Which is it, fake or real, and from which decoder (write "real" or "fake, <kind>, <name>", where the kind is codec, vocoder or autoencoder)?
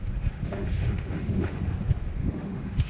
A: fake, autoencoder, DAC-VAE